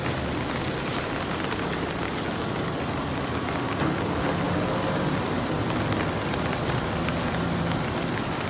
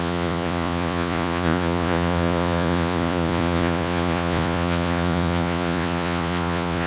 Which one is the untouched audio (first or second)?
first